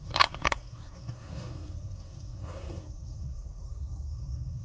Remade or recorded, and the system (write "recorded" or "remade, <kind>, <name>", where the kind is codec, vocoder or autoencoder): remade, codec, SNAC